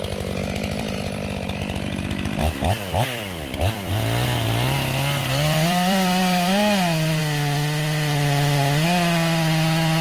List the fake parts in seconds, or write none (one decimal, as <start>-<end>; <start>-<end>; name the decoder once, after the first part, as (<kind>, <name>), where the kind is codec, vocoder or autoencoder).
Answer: 0.4-3.9 (vocoder, BigVGAN v2); 5.2-7.2